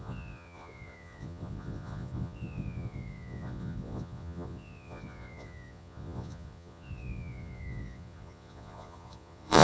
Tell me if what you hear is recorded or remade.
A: remade